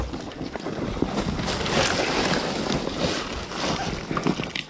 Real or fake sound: real